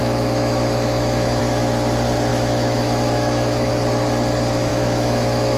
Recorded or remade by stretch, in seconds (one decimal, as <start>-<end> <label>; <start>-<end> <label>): 0.0-1.4 remade; 1.4-2.3 recorded; 2.3-3.7 remade; 3.7-4.7 recorded; 4.7-5.6 remade